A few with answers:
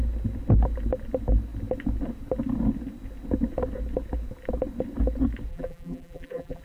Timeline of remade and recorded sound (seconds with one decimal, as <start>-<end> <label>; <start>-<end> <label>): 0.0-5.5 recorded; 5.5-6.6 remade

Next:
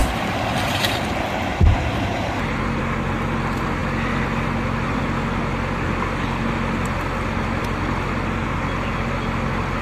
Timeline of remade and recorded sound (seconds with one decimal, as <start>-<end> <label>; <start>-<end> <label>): 0.0-1.0 remade; 1.0-1.5 recorded; 1.5-2.8 remade; 2.8-9.8 recorded

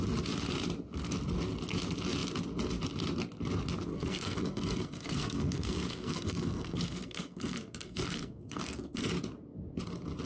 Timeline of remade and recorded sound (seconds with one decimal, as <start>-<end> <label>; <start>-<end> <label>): 0.0-3.9 recorded; 3.9-9.1 remade; 9.1-10.3 recorded

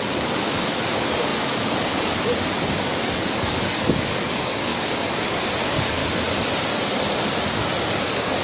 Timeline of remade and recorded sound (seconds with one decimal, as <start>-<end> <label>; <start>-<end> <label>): 0.0-6.0 remade; 6.0-7.9 recorded; 7.9-8.4 remade

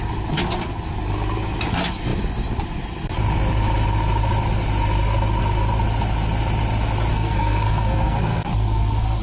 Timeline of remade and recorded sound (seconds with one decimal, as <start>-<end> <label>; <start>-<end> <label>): 0.0-7.1 recorded; 7.1-9.2 remade